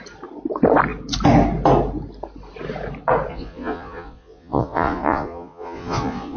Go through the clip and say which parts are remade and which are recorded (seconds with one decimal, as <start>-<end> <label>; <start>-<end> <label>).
0.0-3.3 recorded; 3.3-6.4 remade